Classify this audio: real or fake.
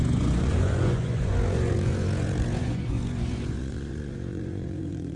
fake